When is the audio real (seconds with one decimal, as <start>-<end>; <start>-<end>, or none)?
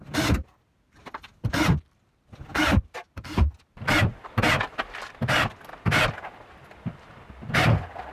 0.0-8.1